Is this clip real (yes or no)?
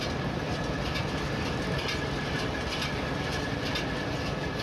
yes